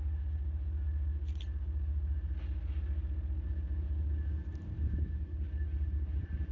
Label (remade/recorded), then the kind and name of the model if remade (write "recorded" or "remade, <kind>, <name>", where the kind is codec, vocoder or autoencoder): recorded